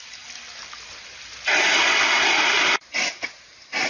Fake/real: real